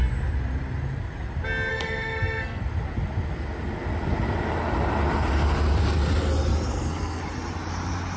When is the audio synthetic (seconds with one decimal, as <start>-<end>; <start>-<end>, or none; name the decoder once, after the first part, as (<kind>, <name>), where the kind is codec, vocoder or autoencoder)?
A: 1.7-2.6 (codec, SNAC); 6.7-7.2